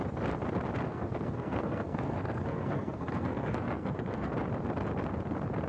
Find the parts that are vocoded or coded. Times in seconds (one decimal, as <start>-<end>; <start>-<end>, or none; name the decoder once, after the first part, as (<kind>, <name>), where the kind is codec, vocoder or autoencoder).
0.9-4.3 (codec, SNAC)